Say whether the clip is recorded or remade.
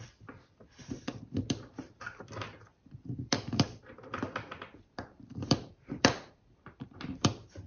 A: remade